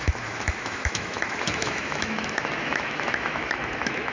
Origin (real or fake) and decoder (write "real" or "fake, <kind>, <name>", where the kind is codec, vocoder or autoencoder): fake, autoencoder, DAC-VAE